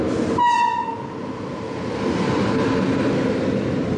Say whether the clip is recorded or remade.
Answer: recorded